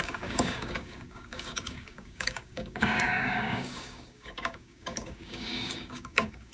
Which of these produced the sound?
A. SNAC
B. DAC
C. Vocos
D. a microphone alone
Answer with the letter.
B